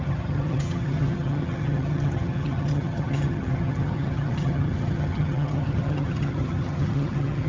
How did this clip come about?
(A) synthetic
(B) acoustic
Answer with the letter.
A